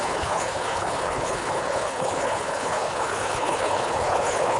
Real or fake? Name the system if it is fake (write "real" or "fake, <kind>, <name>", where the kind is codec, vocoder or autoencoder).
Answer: fake, codec, HILCodec